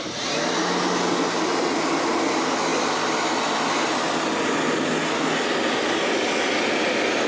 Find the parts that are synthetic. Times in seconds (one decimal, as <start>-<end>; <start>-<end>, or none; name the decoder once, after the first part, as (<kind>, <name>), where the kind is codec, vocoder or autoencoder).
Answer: none